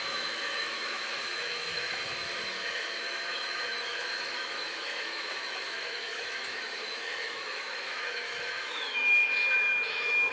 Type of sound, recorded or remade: remade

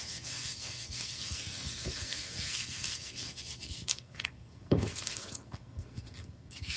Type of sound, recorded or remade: remade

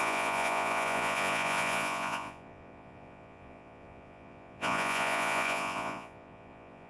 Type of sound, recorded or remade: remade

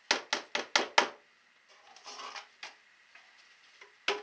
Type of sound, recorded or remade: recorded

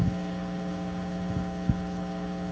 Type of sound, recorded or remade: remade